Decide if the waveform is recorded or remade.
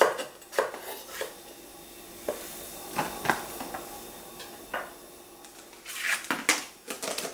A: recorded